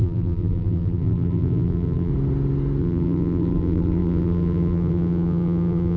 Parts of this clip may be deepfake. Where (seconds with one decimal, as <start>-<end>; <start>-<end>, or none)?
0.0-2.1; 2.8-6.0